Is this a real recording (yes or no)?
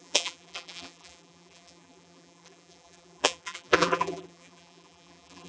no